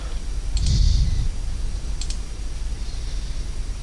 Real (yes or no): yes